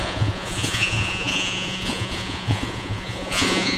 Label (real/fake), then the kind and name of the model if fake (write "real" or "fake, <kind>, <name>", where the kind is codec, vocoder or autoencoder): fake, vocoder, Vocos